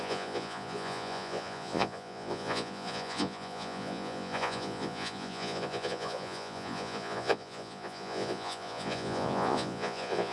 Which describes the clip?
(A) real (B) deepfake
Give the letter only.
B